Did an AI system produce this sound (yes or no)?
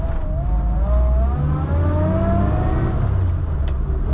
no